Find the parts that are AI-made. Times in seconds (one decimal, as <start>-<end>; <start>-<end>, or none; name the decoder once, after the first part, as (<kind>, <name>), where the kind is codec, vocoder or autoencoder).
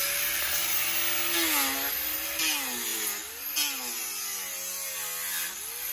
none